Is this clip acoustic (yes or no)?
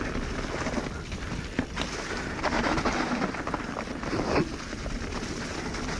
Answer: yes